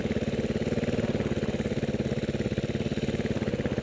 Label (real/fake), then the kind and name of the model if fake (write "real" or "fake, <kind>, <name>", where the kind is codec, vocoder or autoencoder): real